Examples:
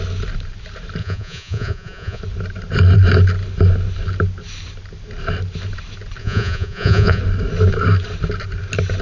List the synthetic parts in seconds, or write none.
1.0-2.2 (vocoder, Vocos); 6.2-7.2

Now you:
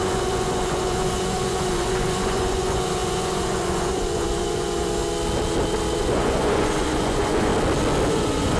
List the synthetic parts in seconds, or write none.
0.0-5.0 (vocoder, Vocos); 6.0-7.5; 8.1-8.6

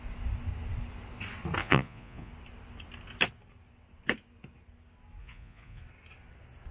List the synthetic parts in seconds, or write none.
1.6-2.3 (vocoder, Vocos); 5.2-5.8